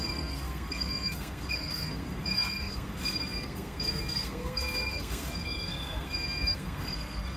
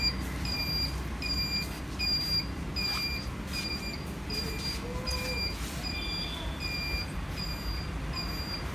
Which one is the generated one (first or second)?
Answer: first